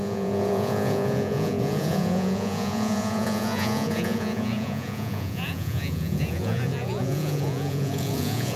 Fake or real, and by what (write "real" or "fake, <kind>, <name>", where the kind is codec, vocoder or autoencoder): fake, vocoder, Vocos